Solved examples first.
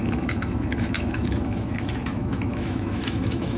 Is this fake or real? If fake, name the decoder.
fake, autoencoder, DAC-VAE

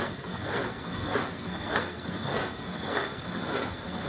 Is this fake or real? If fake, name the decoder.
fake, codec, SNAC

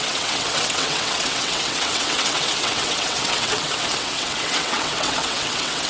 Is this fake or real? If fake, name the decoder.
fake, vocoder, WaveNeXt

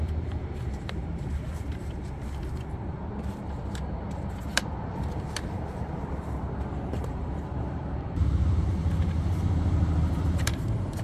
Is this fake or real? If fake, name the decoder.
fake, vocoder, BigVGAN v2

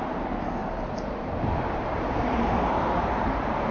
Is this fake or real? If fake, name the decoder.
fake, vocoder, BigVGAN v2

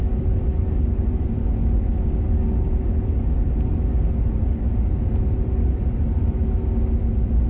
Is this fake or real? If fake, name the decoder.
real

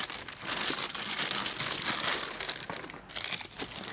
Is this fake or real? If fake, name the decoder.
real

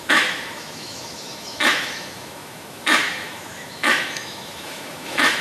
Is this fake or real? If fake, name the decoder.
fake, autoencoder, DAC-VAE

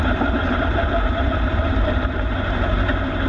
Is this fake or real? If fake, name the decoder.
fake, vocoder, BigVGAN v2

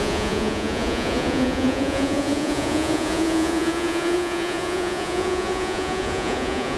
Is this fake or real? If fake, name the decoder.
fake, vocoder, Vocos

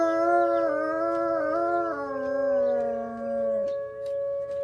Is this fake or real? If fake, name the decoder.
real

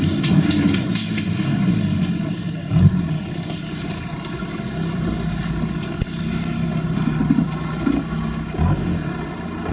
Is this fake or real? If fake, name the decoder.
real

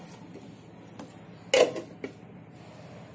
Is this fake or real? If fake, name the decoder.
real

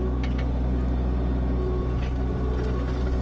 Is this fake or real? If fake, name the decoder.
real